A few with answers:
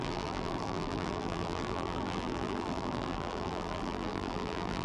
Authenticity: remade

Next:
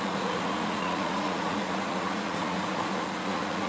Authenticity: remade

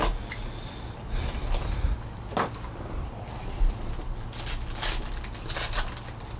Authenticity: recorded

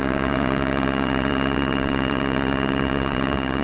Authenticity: remade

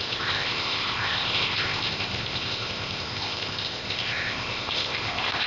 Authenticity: remade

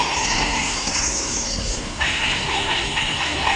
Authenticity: remade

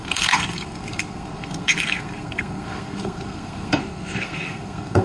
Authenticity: remade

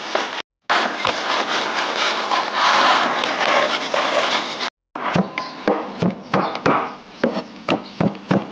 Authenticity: recorded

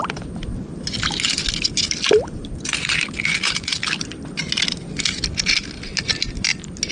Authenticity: recorded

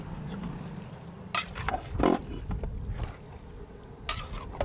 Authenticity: recorded